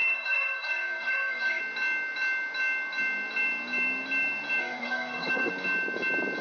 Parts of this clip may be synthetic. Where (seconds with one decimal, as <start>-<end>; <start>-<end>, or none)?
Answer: 0.0-1.6; 4.6-5.5